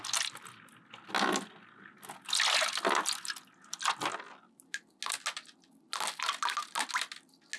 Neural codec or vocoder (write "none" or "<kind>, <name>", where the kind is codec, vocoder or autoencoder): none